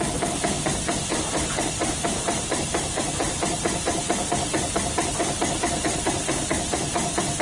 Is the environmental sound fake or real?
real